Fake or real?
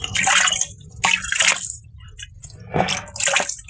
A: real